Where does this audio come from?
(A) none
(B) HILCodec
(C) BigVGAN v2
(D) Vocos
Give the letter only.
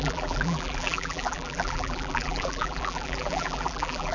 C